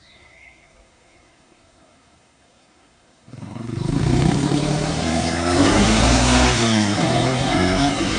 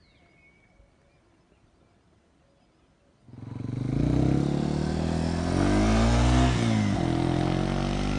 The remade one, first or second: first